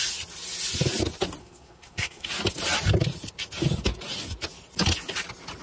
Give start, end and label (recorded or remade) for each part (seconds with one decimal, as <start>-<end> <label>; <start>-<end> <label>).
0.0-1.4 recorded; 1.4-2.3 remade; 2.3-5.6 recorded